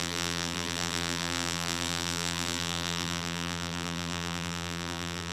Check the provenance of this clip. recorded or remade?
remade